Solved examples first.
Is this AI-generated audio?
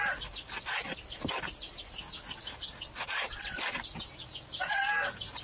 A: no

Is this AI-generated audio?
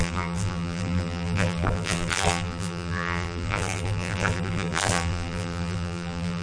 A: yes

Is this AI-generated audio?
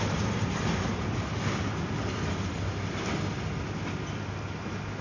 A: no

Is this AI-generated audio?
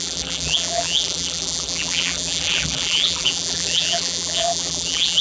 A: yes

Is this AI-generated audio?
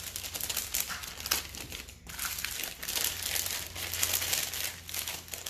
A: no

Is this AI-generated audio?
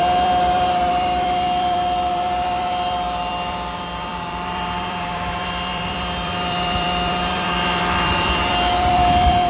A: yes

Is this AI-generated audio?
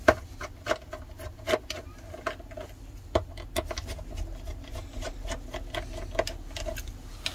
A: no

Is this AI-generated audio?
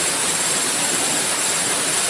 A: no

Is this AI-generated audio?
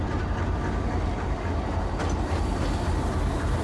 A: no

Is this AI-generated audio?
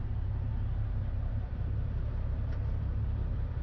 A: yes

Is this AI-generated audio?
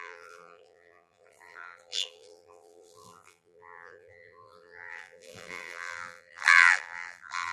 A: yes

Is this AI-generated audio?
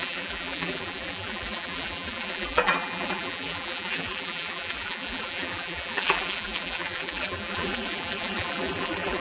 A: yes